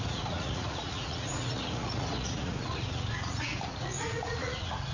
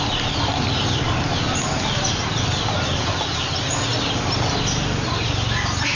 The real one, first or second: second